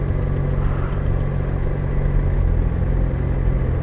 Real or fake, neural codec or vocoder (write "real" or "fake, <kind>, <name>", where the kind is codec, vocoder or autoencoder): real